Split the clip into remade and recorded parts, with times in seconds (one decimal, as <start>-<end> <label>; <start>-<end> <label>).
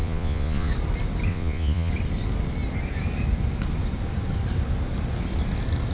0.0-0.7 remade; 0.7-1.3 recorded; 1.3-1.9 remade; 1.9-5.9 recorded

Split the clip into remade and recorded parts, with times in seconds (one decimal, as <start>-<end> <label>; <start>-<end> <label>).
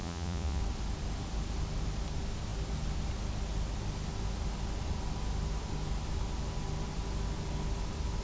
0.0-0.6 remade; 0.6-8.2 recorded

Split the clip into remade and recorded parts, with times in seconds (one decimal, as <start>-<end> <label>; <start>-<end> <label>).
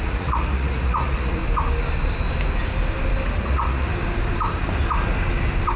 0.0-1.4 remade; 1.4-3.4 recorded; 3.4-3.9 remade; 3.9-5.8 recorded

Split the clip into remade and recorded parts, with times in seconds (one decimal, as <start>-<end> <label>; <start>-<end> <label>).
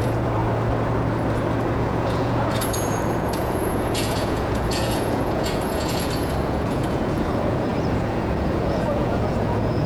0.0-0.4 remade; 0.4-1.7 recorded; 1.7-9.9 remade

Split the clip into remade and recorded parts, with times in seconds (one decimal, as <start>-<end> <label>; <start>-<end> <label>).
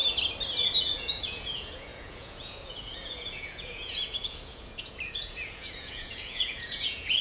0.0-0.8 recorded; 0.8-7.2 remade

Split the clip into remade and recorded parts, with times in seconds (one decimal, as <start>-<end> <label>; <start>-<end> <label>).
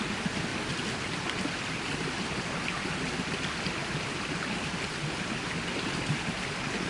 0.0-6.9 recorded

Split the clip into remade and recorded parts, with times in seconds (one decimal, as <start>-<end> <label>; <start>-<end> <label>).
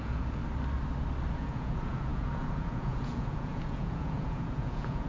0.0-0.4 remade; 0.4-1.3 recorded; 1.3-5.1 remade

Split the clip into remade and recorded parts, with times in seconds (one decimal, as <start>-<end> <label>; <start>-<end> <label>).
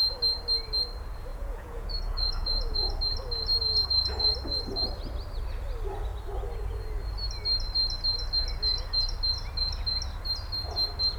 0.0-1.3 recorded; 1.3-2.9 remade; 2.9-11.2 recorded